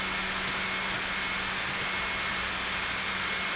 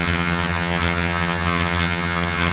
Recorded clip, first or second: first